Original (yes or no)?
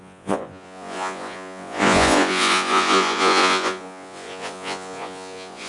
no